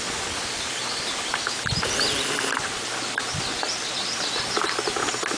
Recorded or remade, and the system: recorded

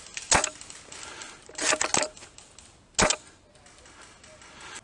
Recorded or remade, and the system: recorded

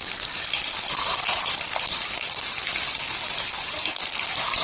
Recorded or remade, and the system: remade, vocoder, BigVGAN v2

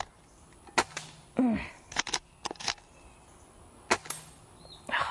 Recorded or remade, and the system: recorded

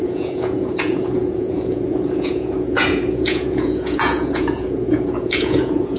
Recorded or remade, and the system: remade, vocoder, Vocos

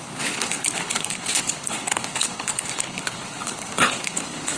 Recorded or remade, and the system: remade, codec, HILCodec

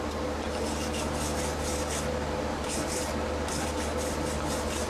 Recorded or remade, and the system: recorded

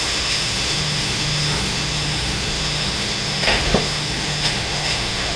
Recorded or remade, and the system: remade, autoencoder, DAC-VAE